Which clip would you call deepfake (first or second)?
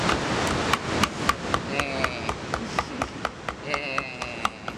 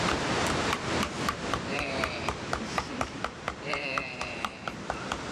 second